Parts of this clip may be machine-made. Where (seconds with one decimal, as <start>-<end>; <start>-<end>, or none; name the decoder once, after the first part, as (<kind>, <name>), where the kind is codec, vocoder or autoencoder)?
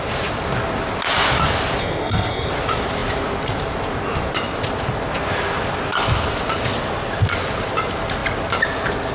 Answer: 1.8-2.5 (codec, SNAC)